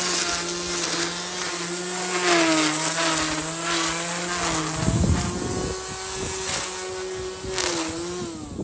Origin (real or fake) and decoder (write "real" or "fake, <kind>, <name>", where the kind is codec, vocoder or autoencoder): real